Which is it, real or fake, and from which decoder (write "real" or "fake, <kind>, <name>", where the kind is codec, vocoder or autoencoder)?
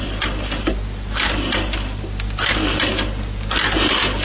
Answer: real